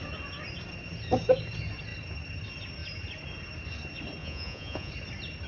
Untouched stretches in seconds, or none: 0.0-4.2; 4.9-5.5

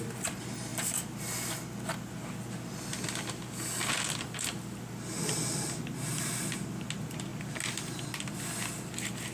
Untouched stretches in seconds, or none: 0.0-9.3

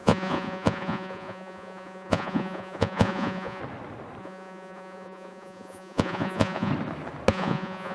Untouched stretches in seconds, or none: 3.6-4.2; 6.7-7.3

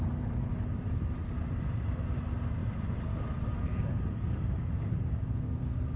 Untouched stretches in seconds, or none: 0.0-6.0

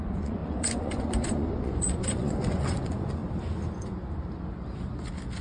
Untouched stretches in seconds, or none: 3.2-5.4

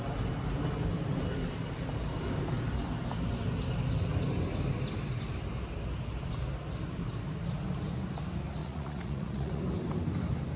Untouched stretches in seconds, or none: 0.0-8.6; 9.6-10.6

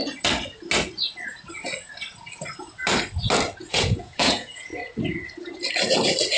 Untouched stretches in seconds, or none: 0.0-3.7; 4.7-6.4